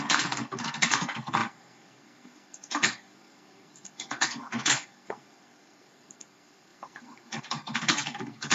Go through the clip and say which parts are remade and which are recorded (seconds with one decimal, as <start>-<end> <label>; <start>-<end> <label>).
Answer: 0.0-8.5 remade